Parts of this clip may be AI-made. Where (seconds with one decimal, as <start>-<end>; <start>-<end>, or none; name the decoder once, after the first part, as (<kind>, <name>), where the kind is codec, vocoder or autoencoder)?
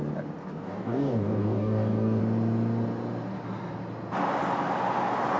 0.4-2.2 (codec, DAC)